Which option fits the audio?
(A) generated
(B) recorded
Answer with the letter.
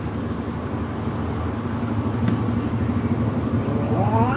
B